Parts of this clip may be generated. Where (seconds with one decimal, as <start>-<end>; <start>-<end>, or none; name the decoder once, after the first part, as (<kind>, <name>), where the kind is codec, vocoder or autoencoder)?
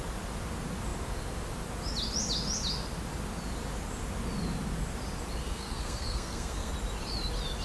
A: 5.4-6.7 (codec, SNAC)